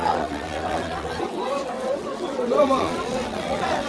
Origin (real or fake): fake